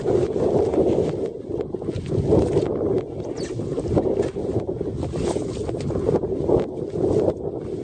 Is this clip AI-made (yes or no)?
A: no